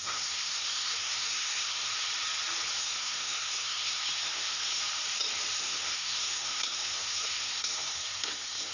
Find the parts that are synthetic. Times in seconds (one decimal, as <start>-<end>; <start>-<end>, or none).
0.0-1.9; 2.8-4.8; 5.6-8.7